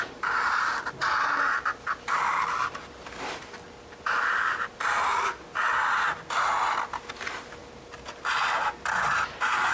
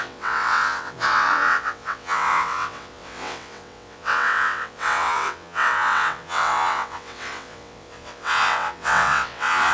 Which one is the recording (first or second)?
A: first